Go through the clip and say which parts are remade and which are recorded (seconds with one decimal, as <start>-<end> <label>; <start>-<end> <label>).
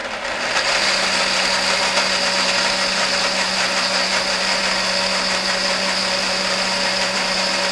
0.0-7.7 recorded